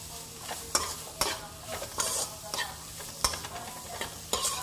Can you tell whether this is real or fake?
real